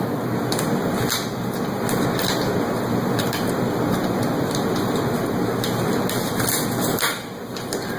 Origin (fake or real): real